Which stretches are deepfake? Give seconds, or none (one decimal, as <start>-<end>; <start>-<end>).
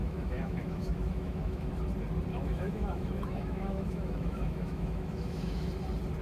0.0-1.7; 2.3-5.7